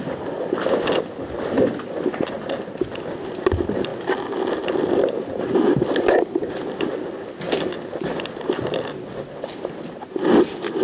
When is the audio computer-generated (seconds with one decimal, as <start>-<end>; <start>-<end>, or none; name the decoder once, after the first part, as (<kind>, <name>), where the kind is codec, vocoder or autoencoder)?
none